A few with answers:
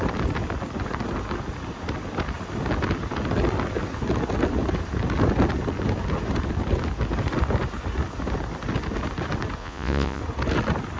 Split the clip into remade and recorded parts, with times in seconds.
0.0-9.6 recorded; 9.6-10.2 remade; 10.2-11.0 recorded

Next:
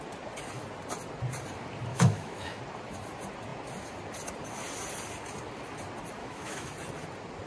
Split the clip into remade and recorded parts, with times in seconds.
0.0-1.9 recorded; 1.9-2.6 remade; 2.6-6.2 recorded; 6.2-6.7 remade; 6.7-7.5 recorded

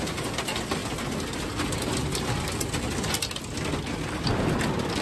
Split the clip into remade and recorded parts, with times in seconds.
0.0-5.0 recorded

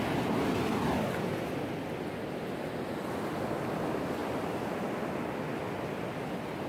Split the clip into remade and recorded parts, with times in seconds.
0.0-6.7 recorded

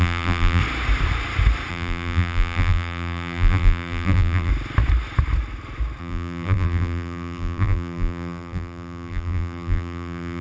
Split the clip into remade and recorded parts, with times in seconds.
0.0-0.6 remade; 0.6-1.7 recorded; 1.7-4.5 remade; 4.5-6.0 recorded; 6.0-10.4 remade

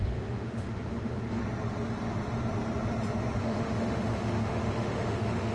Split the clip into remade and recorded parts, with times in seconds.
0.0-1.4 remade; 1.4-3.4 recorded; 3.4-5.5 remade